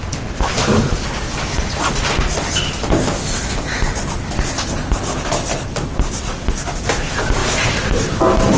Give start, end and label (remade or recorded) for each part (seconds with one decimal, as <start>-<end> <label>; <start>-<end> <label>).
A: 0.0-8.6 recorded